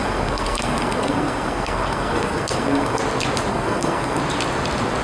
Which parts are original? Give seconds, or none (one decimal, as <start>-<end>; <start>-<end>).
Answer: 3.0-3.5; 4.2-5.0